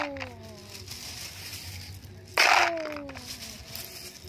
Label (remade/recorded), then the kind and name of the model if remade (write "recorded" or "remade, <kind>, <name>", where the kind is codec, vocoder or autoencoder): recorded